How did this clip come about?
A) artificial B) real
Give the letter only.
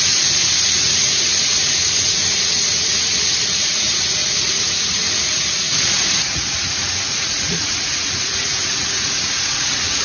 A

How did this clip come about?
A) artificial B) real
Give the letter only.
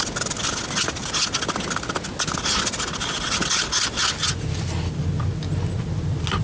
B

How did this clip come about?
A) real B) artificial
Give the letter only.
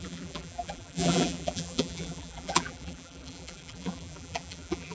B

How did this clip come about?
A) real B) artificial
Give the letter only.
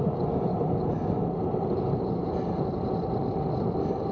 A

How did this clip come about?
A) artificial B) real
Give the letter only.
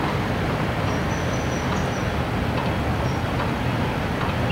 B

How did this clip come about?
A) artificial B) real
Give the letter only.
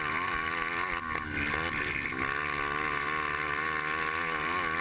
B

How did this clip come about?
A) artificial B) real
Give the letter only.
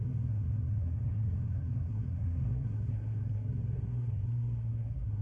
A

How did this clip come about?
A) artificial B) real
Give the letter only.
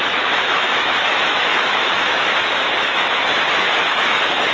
A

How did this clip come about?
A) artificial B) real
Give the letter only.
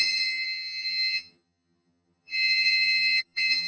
A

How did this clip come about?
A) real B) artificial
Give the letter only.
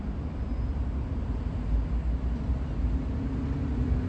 A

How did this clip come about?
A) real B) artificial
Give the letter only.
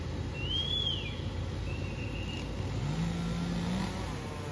A